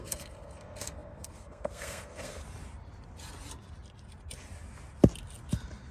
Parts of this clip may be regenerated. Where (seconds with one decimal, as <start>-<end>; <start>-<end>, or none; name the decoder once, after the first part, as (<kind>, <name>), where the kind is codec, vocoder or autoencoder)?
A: 0.0-2.4 (codec, SNAC)